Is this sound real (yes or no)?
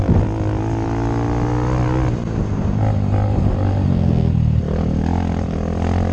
yes